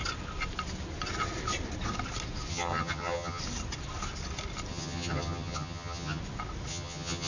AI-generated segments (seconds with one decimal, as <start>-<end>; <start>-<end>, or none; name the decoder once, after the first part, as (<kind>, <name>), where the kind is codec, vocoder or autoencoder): 2.5-3.4 (vocoder, HiFi-GAN); 4.7-6.2; 6.7-7.3